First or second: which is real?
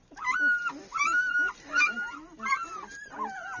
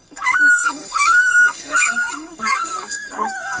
first